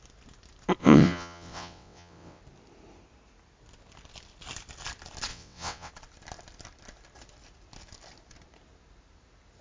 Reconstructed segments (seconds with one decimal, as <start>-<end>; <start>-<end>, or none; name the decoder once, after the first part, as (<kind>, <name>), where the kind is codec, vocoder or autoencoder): 0.8-2.4 (vocoder, WaveNeXt); 5.3-5.9